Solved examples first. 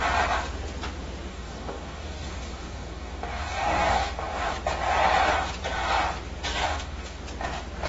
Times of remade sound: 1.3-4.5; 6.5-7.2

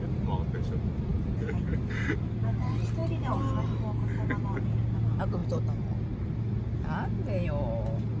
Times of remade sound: none